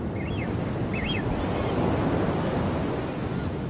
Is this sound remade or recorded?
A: recorded